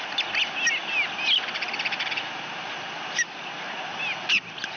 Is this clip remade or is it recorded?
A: recorded